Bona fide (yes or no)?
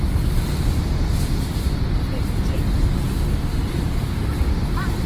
yes